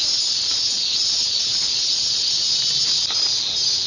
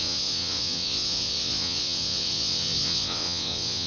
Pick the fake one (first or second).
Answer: second